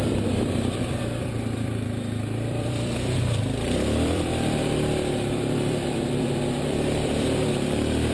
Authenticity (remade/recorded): remade